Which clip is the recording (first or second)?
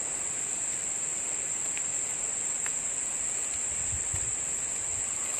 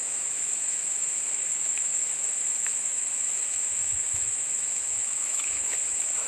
first